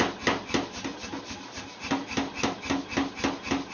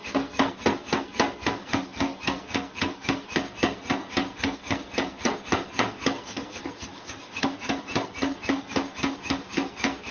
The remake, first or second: second